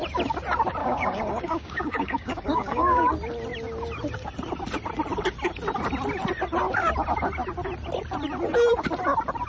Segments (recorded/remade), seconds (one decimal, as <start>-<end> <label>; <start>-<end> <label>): 0.0-0.8 recorded; 0.8-3.1 remade; 3.1-9.5 recorded